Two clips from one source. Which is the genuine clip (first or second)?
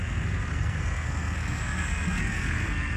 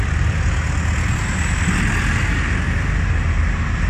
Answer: second